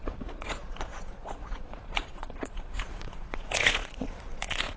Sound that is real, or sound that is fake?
fake